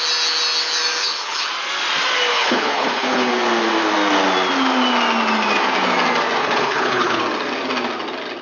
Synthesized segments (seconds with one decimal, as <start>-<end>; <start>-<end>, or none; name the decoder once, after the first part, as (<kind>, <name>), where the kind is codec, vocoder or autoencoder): 1.0-1.5 (codec, HILCodec); 2.3-3.3; 6.4-7.2